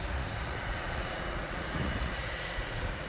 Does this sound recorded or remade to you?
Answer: remade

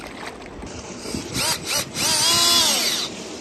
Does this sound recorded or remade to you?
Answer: recorded